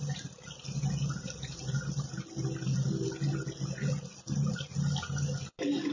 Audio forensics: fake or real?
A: real